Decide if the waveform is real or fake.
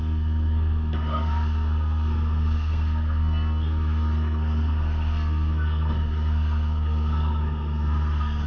fake